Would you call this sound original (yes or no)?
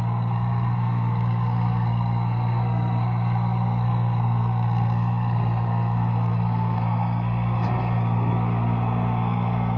no